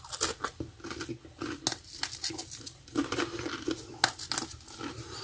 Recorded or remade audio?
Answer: recorded